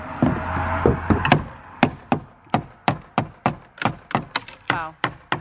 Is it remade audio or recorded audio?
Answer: recorded